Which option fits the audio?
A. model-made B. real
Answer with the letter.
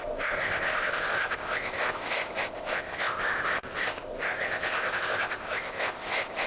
A